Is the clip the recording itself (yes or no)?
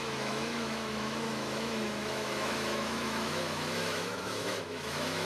no